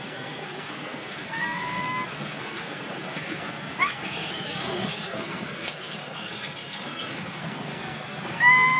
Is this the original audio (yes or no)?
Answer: no